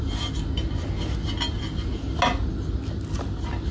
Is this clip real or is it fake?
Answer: real